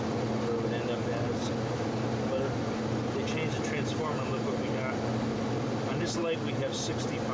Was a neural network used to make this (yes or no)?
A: no